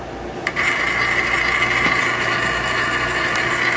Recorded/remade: recorded